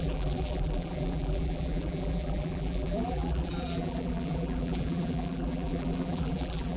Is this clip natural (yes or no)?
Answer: no